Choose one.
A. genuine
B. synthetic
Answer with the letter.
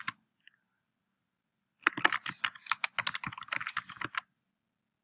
A